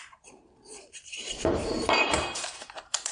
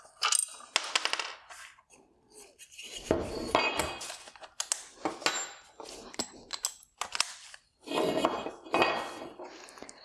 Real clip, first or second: second